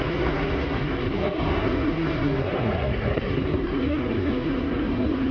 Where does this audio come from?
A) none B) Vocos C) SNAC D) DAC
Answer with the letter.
C